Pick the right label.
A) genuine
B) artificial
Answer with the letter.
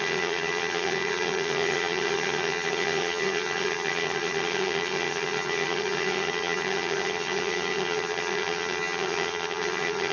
B